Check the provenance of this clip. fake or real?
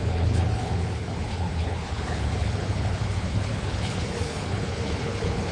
fake